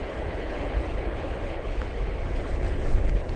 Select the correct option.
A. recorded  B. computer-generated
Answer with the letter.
B